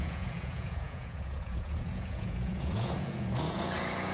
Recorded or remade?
remade